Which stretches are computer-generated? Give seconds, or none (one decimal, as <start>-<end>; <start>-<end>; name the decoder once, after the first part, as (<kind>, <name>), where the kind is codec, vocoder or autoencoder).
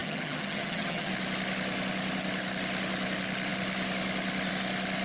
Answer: 0.0-1.1 (vocoder, HiFi-GAN)